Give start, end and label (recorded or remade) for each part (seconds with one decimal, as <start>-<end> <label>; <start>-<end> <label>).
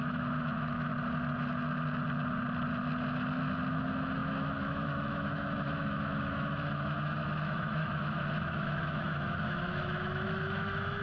0.0-0.9 remade; 0.9-3.7 recorded; 3.7-11.0 remade